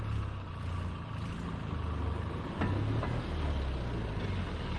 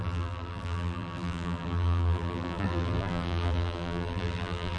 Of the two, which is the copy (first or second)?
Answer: second